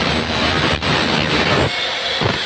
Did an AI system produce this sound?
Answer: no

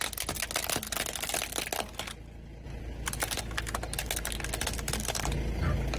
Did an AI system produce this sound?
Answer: no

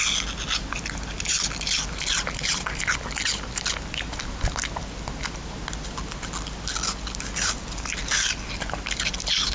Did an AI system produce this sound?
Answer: no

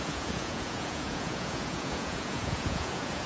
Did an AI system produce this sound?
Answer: yes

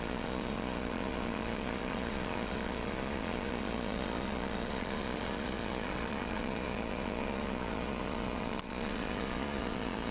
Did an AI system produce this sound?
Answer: yes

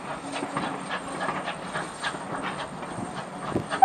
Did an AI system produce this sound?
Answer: no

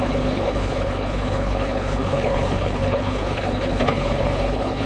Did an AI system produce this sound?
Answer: yes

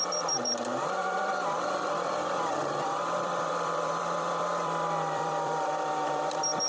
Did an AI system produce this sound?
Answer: yes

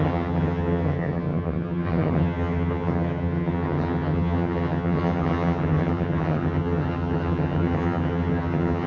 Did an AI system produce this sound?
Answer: yes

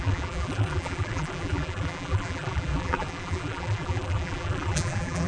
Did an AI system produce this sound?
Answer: yes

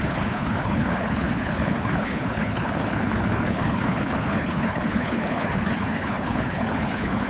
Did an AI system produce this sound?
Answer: yes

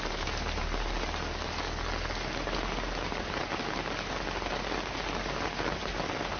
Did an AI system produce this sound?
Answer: no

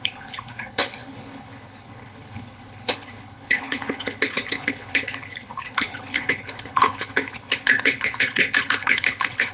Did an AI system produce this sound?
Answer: yes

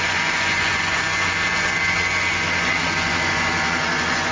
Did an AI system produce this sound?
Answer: yes